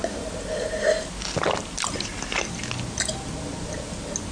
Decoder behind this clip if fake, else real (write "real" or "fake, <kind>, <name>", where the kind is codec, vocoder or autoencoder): real